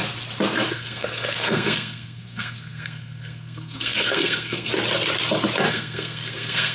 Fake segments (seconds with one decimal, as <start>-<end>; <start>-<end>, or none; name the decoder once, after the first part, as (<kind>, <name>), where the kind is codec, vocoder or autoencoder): 0.7-4.7 (codec, SNAC); 5.7-6.7